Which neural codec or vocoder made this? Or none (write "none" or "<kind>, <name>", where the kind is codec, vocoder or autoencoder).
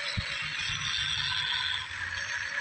none